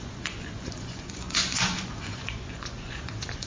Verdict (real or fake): fake